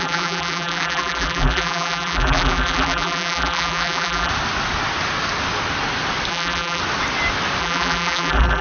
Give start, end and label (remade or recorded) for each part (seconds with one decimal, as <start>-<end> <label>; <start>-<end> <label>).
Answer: 0.0-4.3 remade; 4.3-6.3 recorded; 6.3-6.8 remade; 6.8-7.6 recorded; 7.6-8.6 remade